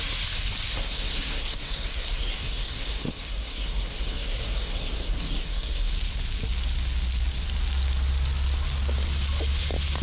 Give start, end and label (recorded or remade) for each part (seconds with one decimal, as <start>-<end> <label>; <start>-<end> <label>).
0.0-0.7 recorded; 0.7-5.9 remade; 5.9-10.0 recorded